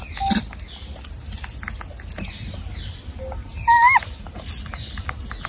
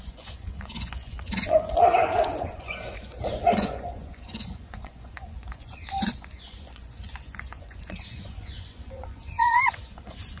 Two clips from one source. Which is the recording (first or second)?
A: first